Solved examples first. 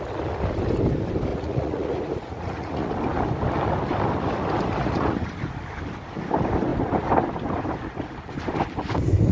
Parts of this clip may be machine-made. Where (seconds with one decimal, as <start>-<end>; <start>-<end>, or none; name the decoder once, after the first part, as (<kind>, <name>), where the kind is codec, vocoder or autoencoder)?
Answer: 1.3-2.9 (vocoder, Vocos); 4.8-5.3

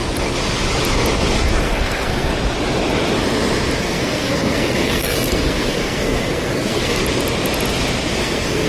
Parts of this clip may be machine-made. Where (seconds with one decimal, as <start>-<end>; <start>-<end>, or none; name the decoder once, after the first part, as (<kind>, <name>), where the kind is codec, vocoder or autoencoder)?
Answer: 1.6-2.3 (codec, SNAC); 3.8-7.0; 8.2-8.7

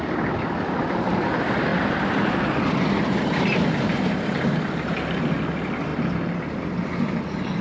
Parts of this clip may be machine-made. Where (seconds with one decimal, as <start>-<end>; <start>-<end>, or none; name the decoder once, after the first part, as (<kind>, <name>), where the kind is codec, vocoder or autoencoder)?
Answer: none

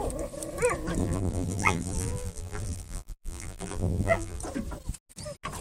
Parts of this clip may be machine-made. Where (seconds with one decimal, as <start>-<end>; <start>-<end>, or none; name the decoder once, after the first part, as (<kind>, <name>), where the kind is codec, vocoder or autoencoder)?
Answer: 1.0-4.4 (vocoder, BigVGAN v2)